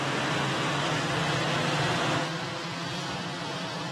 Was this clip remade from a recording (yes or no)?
no